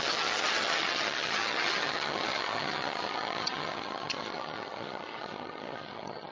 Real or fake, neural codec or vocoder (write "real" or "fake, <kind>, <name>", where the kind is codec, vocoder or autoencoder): fake, vocoder, HiFi-GAN